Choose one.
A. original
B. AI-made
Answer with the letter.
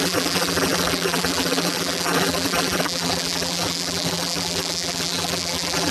B